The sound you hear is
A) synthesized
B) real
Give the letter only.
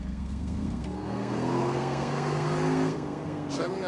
A